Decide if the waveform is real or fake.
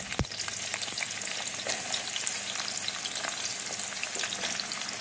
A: real